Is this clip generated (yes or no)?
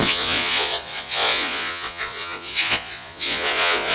yes